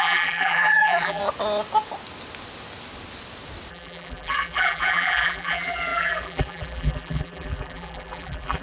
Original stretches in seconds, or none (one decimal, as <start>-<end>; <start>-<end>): 1.2-3.7